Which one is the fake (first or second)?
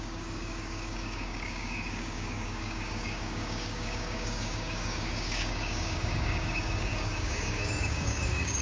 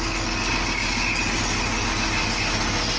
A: first